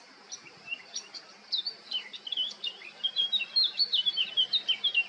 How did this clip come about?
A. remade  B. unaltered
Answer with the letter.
A